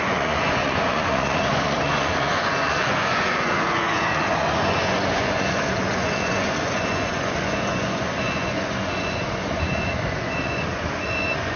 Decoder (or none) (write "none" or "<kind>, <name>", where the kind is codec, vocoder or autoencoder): vocoder, Vocos